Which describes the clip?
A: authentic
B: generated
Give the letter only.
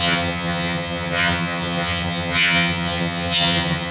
B